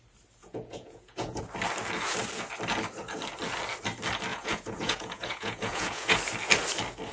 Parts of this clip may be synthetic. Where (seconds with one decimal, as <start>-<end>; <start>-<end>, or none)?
0.4-1.4; 4.3-6.2